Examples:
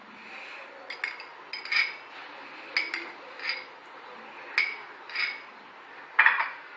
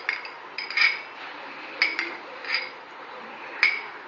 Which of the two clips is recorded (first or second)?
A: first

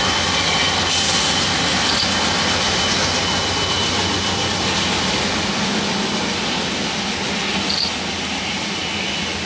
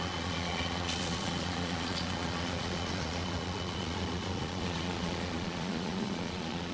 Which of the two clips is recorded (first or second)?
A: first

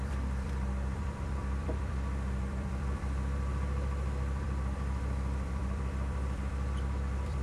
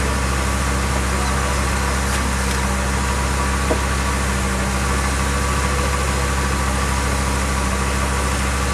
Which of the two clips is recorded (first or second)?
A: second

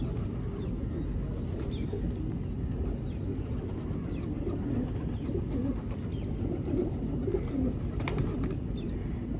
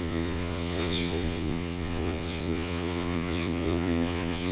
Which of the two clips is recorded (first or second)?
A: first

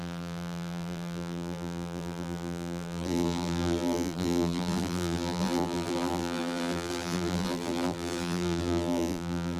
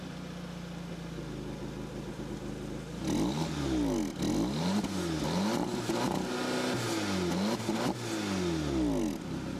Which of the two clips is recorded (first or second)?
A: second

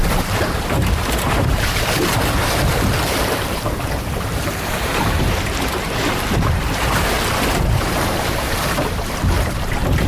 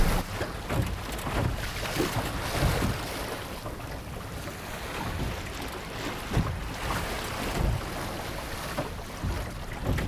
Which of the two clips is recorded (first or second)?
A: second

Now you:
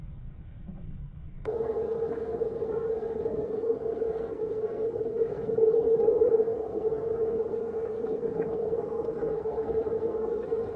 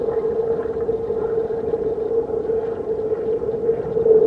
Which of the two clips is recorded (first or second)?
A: second